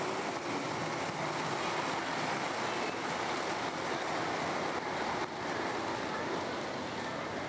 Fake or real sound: real